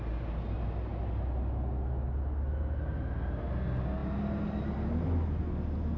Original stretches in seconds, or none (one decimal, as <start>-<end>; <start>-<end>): 0.0-6.0